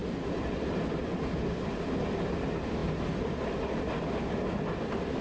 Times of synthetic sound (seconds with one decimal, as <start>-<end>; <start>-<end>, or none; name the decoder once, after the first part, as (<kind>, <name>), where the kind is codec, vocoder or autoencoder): none